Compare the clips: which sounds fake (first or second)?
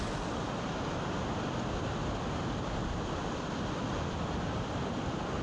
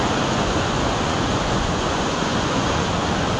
second